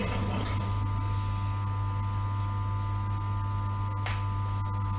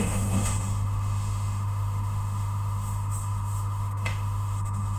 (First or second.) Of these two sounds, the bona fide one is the first